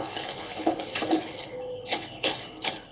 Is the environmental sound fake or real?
fake